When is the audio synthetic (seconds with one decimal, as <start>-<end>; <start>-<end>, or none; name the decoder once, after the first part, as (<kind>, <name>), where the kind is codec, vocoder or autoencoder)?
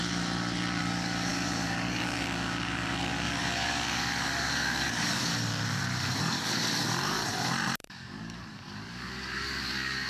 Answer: 0.8-5.3 (codec, DAC); 6.2-7.2; 7.8-10.1